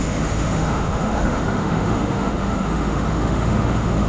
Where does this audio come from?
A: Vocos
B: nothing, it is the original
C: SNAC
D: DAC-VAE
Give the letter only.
D